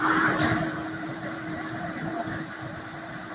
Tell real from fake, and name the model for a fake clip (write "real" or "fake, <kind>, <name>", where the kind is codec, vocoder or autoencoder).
fake, vocoder, BigVGAN v2